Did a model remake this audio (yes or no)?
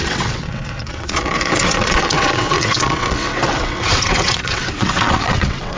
yes